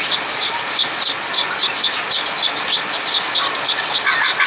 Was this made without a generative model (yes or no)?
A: yes